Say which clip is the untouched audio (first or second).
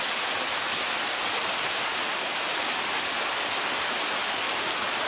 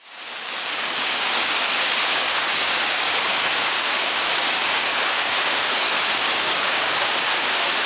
first